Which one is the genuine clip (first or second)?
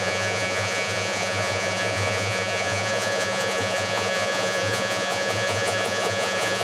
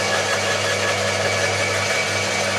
second